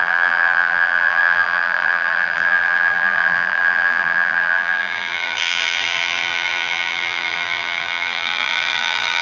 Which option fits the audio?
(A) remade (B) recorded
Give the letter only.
A